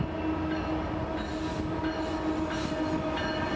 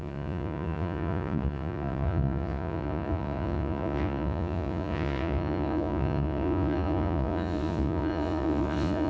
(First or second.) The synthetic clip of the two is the second